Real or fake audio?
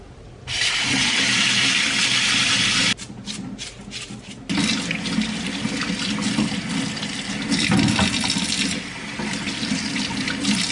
real